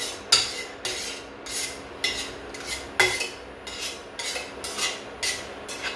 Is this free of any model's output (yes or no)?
yes